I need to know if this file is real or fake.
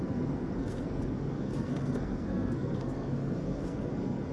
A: fake